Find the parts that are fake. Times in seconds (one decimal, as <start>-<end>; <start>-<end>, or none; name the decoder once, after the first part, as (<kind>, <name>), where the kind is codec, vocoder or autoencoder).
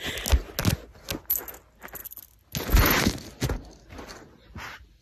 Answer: none